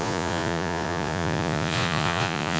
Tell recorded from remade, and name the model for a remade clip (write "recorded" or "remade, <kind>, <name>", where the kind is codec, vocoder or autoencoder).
remade, vocoder, Vocos